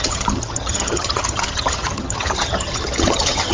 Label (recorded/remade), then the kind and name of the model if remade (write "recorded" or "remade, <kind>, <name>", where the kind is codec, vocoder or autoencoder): remade, vocoder, HiFi-GAN